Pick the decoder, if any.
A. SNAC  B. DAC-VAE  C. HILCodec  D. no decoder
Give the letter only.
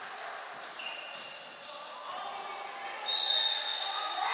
D